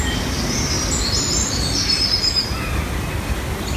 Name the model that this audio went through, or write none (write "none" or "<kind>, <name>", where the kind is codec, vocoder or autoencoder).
none